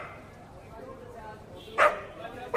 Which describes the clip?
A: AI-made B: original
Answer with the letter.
A